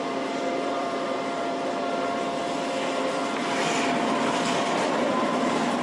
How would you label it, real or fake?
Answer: fake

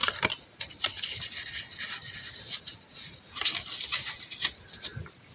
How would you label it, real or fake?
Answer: real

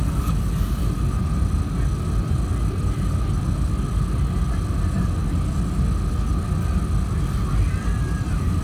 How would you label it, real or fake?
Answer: real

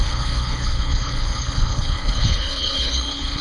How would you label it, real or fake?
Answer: fake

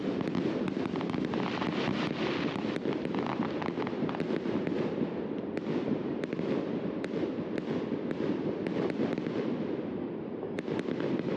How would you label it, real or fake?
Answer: fake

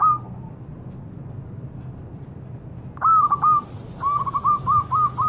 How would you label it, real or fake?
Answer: real